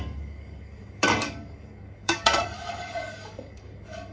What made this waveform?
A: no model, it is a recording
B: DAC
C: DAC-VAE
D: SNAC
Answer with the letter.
B